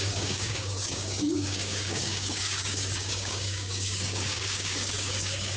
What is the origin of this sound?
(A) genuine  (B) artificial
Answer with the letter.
B